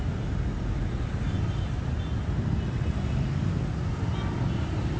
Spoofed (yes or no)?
no